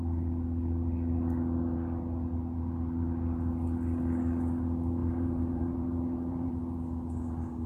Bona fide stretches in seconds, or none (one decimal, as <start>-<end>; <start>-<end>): 0.0-5.0; 6.6-7.7